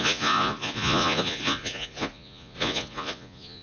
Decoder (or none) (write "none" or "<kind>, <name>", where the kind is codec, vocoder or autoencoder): vocoder, Vocos